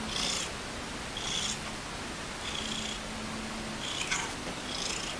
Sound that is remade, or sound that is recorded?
recorded